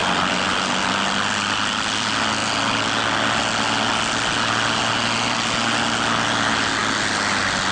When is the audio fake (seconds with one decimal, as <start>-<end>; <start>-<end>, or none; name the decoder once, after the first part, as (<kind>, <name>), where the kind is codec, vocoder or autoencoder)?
none